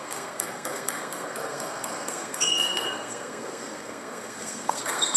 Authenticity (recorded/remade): remade